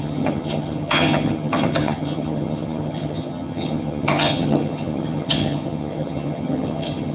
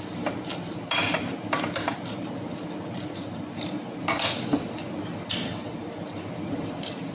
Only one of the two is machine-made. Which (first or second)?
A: first